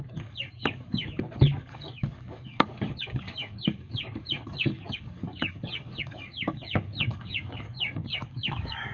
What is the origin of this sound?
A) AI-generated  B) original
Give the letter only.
A